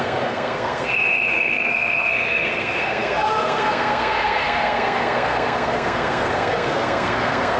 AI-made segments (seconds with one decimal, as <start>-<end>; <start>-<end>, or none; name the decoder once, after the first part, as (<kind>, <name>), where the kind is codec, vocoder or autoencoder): 0.0-7.6 (codec, SNAC)